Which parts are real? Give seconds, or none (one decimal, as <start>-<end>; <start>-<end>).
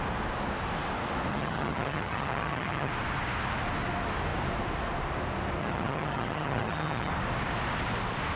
0.0-1.3; 2.9-5.6; 7.1-8.4